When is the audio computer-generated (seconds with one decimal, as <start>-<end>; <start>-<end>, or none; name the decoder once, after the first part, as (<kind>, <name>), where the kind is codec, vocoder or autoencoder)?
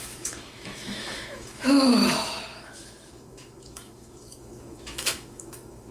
0.0-5.9 (autoencoder, DAC-VAE)